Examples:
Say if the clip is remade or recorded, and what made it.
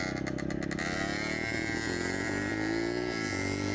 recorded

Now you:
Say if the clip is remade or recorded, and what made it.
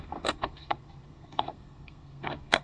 remade, codec, SNAC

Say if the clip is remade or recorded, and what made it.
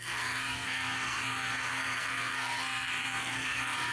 remade, codec, SNAC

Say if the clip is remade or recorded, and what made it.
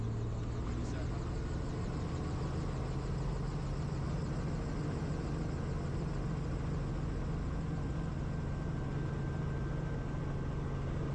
recorded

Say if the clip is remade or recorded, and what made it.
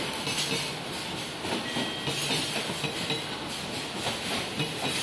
recorded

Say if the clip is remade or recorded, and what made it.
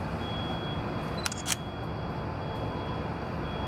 recorded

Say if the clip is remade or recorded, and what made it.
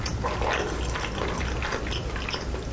recorded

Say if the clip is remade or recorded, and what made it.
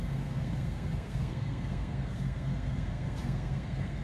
remade, codec, SNAC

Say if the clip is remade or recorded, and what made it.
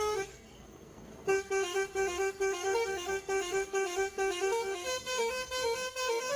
remade, codec, SNAC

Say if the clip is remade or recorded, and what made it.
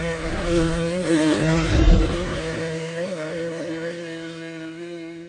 remade, codec, SNAC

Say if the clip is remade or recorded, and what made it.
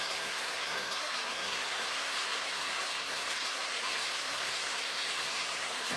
remade, codec, SNAC